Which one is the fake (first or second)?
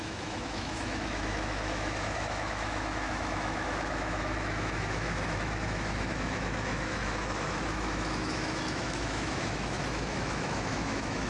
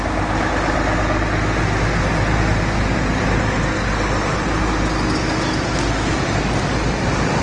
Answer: first